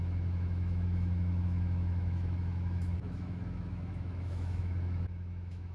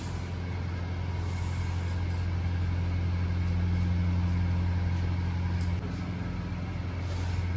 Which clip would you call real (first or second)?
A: second